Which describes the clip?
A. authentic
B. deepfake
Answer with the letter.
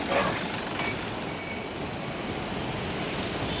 A